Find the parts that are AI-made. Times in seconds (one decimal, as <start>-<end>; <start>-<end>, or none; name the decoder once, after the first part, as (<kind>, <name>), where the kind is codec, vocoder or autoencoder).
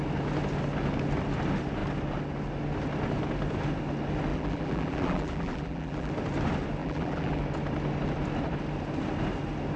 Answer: 4.3-6.1 (vocoder, BigVGAN v2); 6.8-7.4